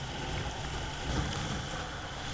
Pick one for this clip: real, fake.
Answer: real